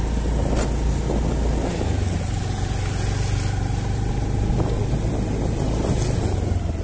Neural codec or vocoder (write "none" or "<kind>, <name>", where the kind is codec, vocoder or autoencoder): none